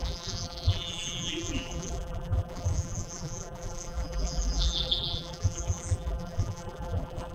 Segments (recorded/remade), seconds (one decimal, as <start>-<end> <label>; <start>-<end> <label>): 0.0-7.3 remade